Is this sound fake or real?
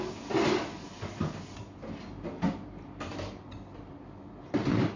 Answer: real